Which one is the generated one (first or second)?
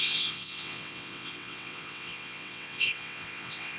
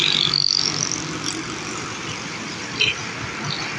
first